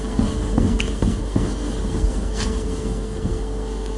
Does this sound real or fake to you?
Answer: fake